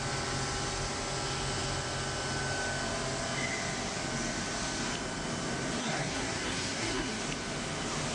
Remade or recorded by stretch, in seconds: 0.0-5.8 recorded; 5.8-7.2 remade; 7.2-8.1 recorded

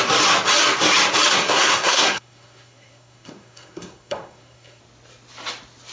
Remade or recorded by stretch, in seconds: 0.0-1.3 recorded; 1.3-4.8 remade; 4.8-5.9 recorded

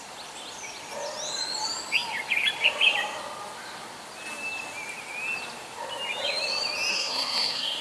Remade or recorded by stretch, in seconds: 0.0-6.9 recorded; 6.9-7.8 remade

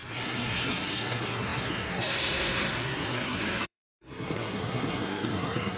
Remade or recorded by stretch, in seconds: 0.0-5.8 remade